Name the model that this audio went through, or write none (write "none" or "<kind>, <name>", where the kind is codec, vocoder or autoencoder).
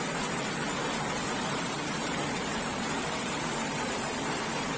vocoder, BigVGAN v2